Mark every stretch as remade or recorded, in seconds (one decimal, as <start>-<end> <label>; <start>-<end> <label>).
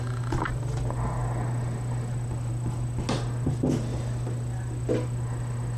0.0-5.8 recorded